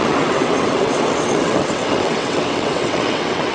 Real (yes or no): no